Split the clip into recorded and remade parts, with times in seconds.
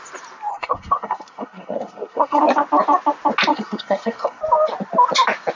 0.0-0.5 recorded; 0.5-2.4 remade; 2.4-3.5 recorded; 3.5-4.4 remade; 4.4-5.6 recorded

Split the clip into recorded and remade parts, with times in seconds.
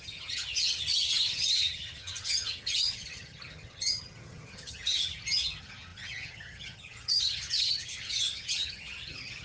0.0-9.4 remade